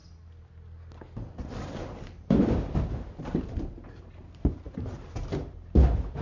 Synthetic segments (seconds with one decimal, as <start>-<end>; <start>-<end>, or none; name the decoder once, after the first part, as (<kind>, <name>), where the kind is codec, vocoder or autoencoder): 1.6-6.2 (vocoder, BigVGAN v2)